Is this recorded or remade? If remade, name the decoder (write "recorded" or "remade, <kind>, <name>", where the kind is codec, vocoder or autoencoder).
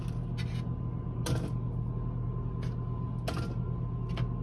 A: recorded